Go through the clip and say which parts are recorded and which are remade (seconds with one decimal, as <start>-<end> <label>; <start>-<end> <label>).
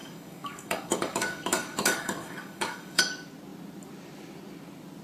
0.0-3.0 remade; 3.0-5.0 recorded